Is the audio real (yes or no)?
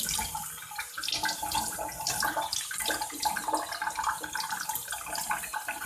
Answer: yes